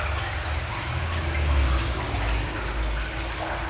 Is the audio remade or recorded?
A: recorded